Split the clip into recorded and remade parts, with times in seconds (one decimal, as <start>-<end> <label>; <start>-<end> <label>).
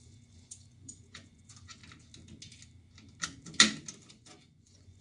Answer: 0.0-1.8 remade; 1.8-4.1 recorded; 4.1-5.0 remade